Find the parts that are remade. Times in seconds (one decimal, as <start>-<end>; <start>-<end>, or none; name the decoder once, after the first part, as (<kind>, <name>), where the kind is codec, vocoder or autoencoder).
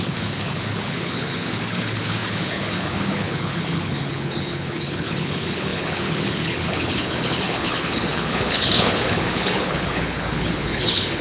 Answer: 0.0-11.2 (codec, HILCodec)